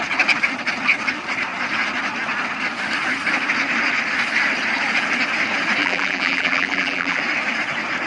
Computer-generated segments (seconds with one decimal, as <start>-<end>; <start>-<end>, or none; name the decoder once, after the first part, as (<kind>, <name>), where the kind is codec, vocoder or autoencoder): 5.8-7.2 (vocoder, BigVGAN v2)